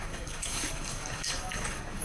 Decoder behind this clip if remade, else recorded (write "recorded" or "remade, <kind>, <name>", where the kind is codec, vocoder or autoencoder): remade, codec, DAC